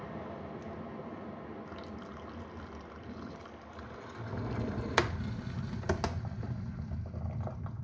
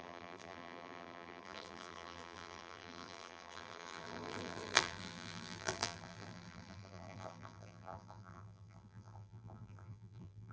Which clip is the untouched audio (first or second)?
first